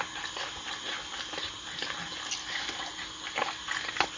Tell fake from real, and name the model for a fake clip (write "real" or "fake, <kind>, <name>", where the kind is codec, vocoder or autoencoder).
real